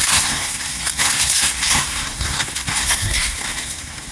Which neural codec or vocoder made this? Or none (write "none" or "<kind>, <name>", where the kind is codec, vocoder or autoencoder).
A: codec, SNAC